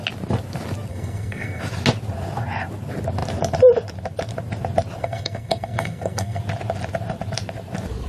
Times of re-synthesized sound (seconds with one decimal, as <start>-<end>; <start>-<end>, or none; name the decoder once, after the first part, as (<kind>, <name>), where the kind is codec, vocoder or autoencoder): 0.9-1.6 (codec, SNAC); 5.0-6.4